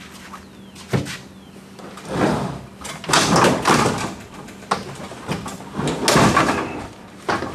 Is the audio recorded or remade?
recorded